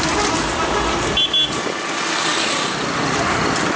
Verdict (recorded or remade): recorded